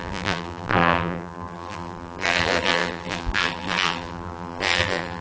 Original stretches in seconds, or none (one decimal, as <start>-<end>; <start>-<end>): none